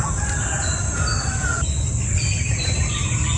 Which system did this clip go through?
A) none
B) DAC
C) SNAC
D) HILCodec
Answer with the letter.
A